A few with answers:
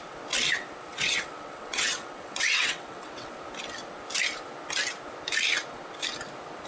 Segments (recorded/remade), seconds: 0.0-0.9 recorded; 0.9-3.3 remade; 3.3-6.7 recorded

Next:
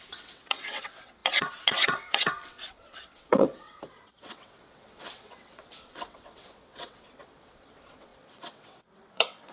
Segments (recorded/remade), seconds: 0.0-9.5 remade

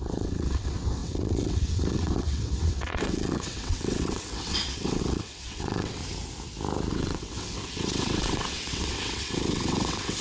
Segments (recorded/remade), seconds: 0.0-6.0 remade; 6.0-6.9 recorded; 6.9-10.2 remade

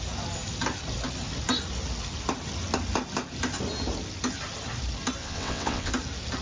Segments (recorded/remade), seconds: 0.0-5.2 recorded; 5.2-5.9 remade; 5.9-6.4 recorded

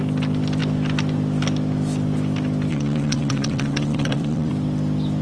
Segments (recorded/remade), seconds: 0.0-2.7 recorded; 2.7-4.5 remade; 4.5-5.2 recorded